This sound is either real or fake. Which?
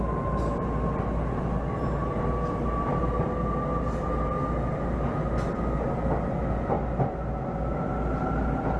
real